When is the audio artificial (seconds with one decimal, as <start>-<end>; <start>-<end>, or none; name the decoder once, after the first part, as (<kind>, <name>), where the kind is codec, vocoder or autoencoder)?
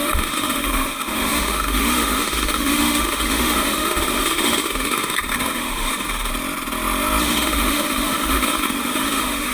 0.0-6.3 (autoencoder, DAC-VAE); 7.2-9.5